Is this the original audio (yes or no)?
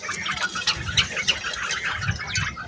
yes